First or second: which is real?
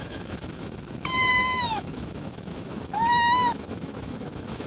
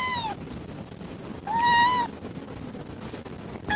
second